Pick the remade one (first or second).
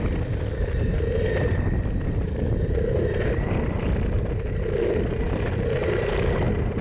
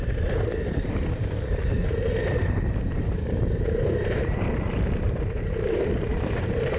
second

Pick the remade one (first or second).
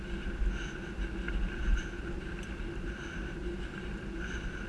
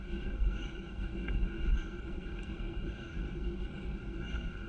second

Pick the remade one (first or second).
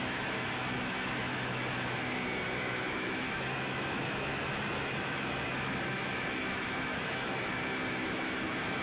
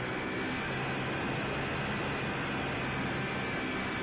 first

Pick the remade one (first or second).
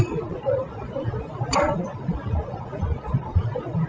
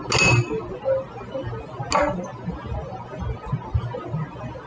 first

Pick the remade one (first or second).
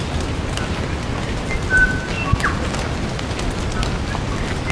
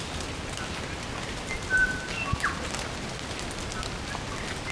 second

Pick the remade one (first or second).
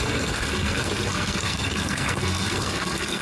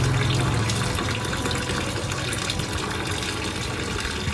first